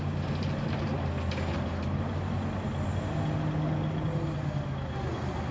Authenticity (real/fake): real